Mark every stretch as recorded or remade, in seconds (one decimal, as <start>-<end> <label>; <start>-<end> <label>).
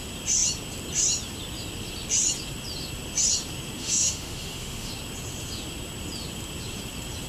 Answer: 0.0-3.8 recorded; 3.8-4.9 remade; 4.9-7.3 recorded